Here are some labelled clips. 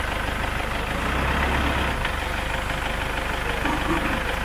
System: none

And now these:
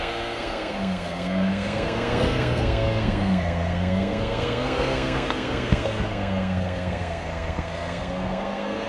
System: codec, SNAC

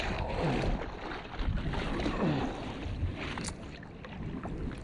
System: none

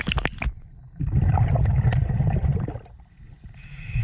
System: none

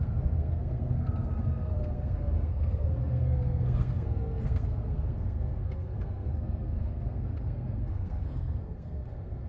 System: codec, SNAC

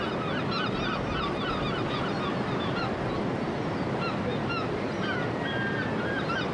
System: none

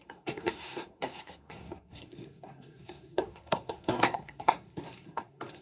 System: codec, SNAC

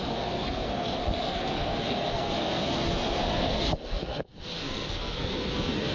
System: codec, SNAC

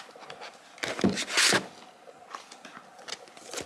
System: none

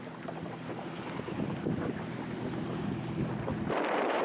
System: none